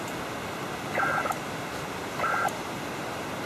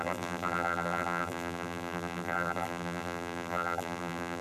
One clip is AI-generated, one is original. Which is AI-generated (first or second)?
second